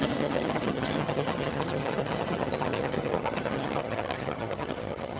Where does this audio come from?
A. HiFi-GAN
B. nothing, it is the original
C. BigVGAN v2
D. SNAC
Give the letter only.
A